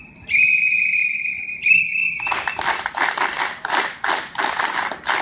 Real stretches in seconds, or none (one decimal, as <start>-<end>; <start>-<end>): 0.0-1.0; 1.6-5.2